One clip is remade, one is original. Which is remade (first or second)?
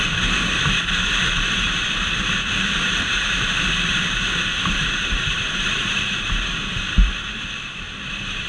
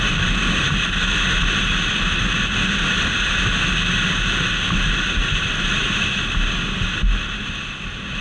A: first